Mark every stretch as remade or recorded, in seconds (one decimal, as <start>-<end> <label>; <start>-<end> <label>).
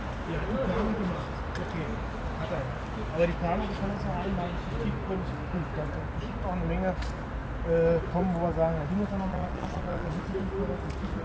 0.0-9.3 recorded; 9.3-10.1 remade; 10.1-11.2 recorded